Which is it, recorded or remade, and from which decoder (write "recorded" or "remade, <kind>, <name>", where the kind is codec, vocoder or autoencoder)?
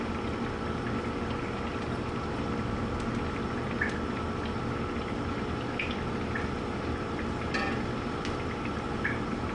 recorded